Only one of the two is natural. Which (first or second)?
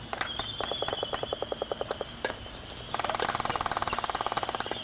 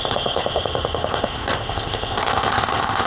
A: first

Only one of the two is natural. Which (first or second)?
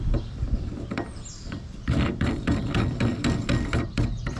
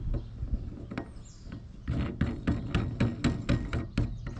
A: second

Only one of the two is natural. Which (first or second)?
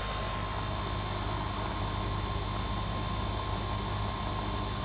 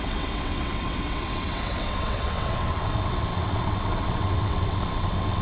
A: first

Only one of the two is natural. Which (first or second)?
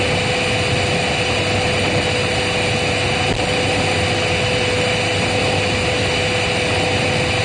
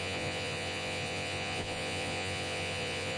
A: first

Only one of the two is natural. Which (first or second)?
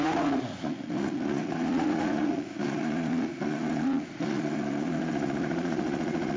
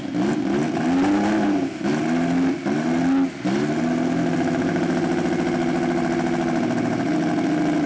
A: second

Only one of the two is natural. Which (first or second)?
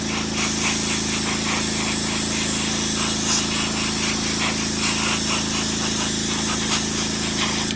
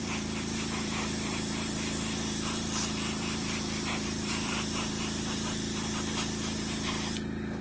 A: first